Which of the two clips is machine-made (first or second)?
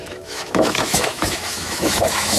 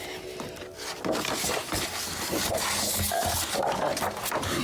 first